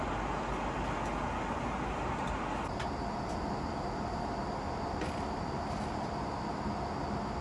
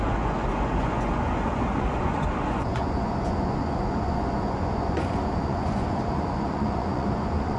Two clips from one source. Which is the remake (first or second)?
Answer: second